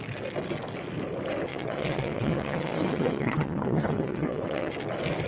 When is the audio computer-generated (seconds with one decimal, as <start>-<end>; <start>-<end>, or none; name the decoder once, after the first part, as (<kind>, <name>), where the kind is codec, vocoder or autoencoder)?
1.5-4.7 (vocoder, WaveNeXt)